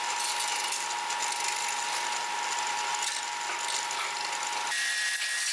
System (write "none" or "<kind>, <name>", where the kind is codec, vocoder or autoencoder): none